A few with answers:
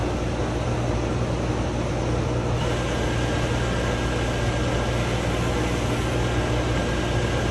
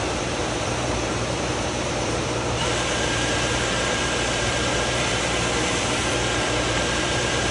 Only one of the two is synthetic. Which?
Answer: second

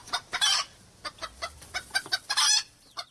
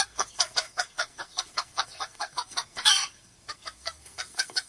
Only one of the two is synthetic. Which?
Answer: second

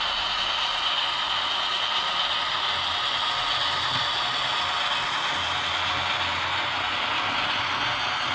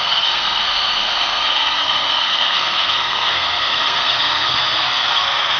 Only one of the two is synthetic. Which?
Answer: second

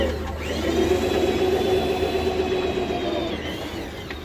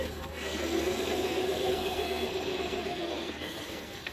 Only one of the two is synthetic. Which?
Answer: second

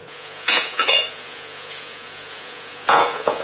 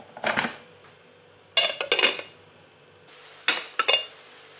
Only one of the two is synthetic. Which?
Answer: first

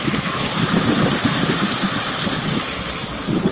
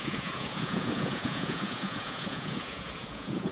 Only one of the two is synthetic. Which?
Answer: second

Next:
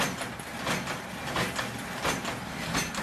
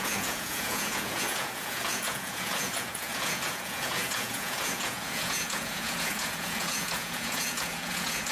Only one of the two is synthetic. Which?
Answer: second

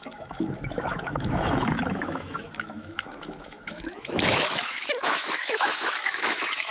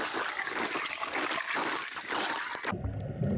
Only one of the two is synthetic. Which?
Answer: first